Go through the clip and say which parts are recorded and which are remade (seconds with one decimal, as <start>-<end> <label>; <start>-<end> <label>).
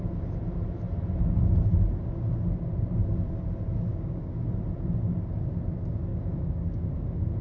0.0-3.9 recorded; 3.9-4.5 remade; 4.5-6.1 recorded; 6.1-6.9 remade; 6.9-7.4 recorded